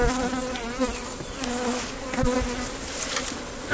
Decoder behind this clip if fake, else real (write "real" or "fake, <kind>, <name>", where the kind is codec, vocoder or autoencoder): real